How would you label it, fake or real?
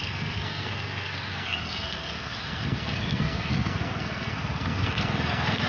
fake